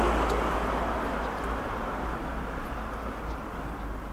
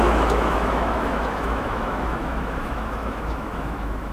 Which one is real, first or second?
first